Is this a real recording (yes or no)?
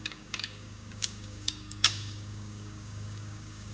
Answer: no